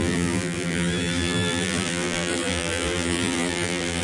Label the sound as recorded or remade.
remade